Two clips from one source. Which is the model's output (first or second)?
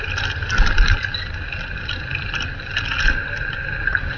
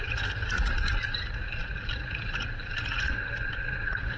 second